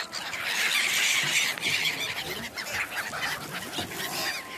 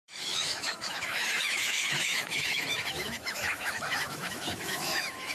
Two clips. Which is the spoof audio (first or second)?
second